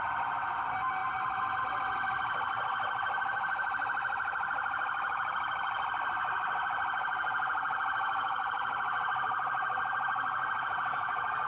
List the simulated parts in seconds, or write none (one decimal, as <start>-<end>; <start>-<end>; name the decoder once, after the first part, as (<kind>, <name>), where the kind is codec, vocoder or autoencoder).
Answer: none